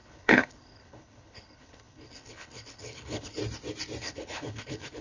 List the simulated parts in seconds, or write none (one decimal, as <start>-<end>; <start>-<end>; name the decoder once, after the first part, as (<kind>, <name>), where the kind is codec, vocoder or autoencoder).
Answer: 0.0-3.4 (codec, HILCodec); 4.0-5.0